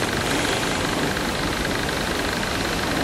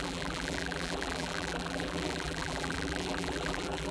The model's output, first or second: second